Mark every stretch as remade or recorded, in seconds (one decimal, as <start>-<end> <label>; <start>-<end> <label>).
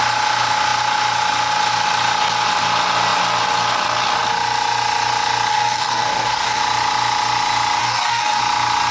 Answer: 0.0-5.5 recorded; 5.5-6.6 remade; 6.6-7.8 recorded; 7.8-8.4 remade; 8.4-8.9 recorded